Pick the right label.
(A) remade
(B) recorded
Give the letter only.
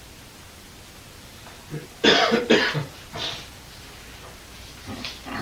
B